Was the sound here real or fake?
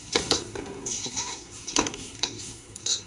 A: fake